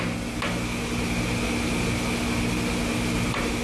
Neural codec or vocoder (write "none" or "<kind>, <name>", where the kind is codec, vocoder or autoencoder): none